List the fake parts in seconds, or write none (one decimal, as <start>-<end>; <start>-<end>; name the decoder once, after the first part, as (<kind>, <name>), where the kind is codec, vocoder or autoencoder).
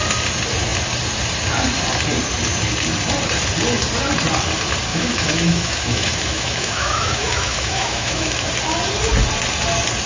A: 4.9-8.5 (autoencoder, DAC-VAE)